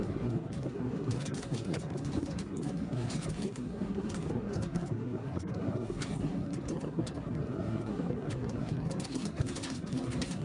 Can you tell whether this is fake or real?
fake